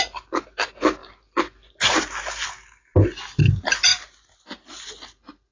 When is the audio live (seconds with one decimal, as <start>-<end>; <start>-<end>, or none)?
0.0-5.5